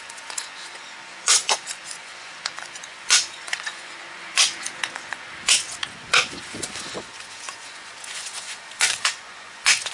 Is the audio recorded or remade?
remade